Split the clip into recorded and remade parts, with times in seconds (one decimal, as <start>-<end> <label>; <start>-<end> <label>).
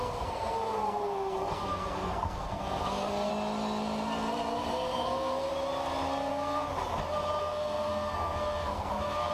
0.0-3.3 remade; 3.3-4.7 recorded; 4.7-5.5 remade; 5.5-6.3 recorded; 6.3-6.7 remade; 6.7-7.4 recorded; 7.4-9.3 remade